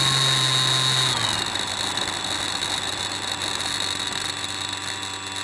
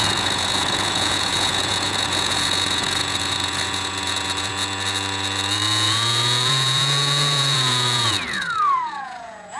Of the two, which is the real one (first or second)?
first